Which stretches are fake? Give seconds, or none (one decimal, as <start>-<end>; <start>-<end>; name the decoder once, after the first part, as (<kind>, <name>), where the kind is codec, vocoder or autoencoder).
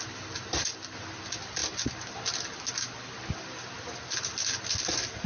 none